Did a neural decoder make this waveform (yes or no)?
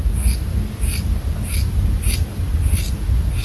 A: no